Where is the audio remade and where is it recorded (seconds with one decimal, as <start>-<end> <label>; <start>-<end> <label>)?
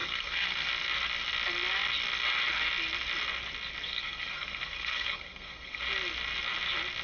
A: 0.0-0.7 remade; 0.7-3.9 recorded; 3.9-5.8 remade; 5.8-7.0 recorded